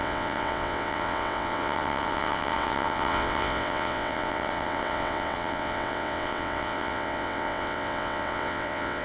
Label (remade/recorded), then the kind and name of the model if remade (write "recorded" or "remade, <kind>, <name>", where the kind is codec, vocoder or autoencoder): remade, vocoder, WaveNeXt